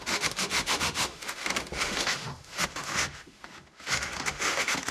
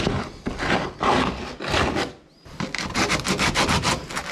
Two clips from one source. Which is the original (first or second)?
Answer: second